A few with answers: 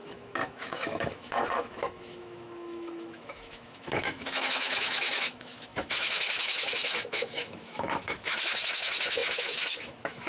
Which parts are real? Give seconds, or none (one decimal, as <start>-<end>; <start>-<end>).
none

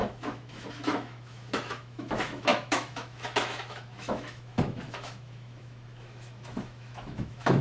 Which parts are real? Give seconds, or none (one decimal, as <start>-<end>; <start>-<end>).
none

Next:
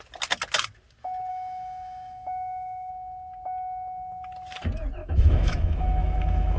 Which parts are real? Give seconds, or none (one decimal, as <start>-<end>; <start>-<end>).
0.0-1.3; 2.9-5.0